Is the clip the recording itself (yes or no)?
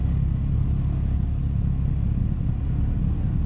yes